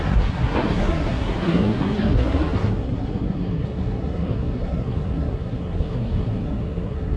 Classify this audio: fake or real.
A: fake